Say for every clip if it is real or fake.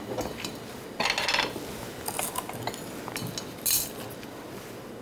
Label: real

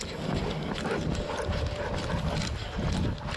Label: real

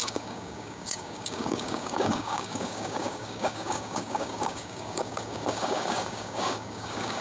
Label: fake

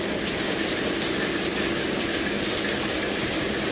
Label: real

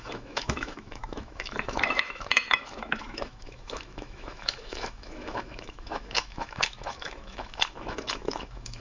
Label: fake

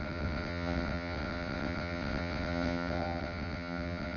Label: fake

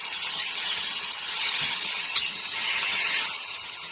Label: fake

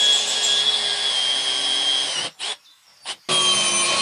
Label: real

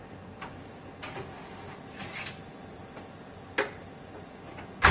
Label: real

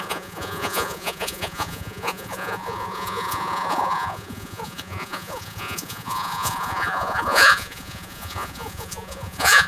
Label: fake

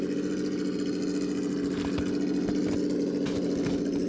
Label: real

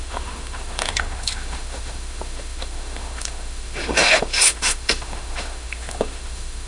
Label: fake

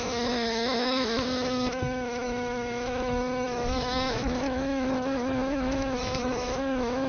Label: fake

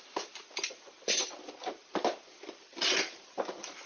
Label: fake